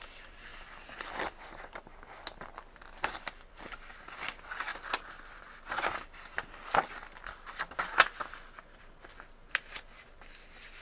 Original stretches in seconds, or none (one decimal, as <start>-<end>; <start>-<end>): 0.0-10.8